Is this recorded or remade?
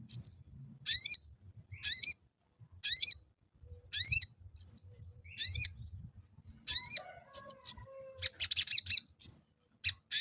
recorded